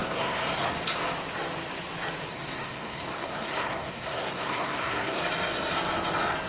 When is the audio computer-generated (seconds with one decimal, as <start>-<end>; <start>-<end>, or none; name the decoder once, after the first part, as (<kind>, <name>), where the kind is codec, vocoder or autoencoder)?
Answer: 0.0-0.7 (codec, SNAC); 2.3-5.2